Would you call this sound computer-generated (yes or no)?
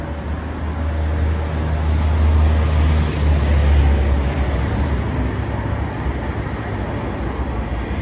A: no